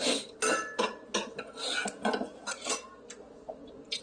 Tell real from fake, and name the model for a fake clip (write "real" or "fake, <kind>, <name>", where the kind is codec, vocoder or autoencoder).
real